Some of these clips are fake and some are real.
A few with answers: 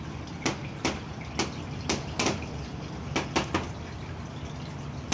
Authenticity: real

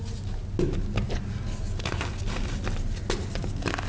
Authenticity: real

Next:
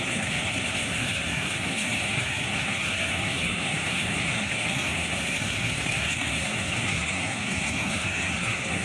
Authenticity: fake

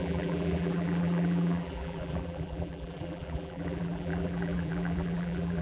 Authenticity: fake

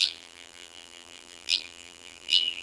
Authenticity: fake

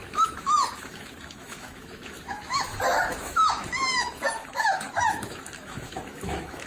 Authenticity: fake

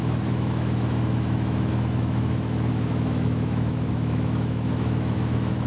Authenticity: fake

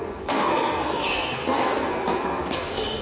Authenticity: fake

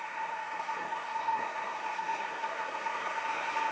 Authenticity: fake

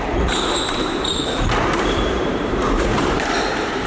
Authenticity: fake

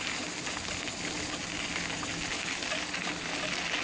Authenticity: real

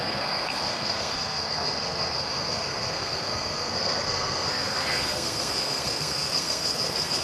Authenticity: fake